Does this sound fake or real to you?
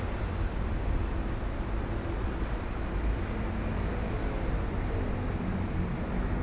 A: real